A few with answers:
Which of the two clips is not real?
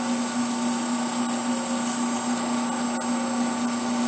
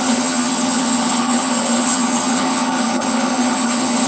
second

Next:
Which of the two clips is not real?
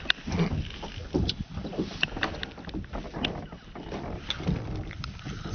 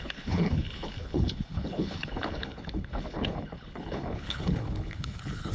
second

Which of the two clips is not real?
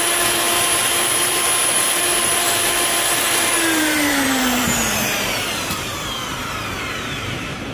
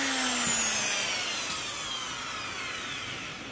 first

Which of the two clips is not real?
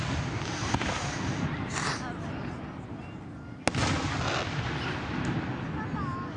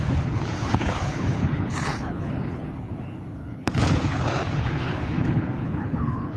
second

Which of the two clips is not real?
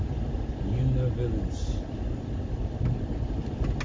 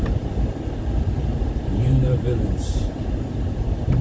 second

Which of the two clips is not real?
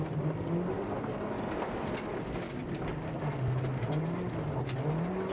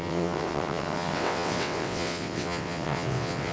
second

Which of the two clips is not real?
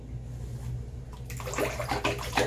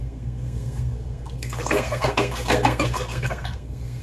second